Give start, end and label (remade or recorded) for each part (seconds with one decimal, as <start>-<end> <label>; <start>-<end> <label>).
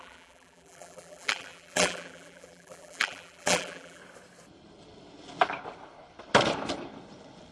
0.0-4.0 remade; 4.0-7.5 recorded